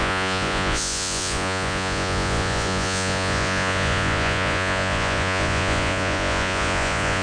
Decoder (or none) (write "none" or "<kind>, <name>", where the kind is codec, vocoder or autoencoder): vocoder, Vocos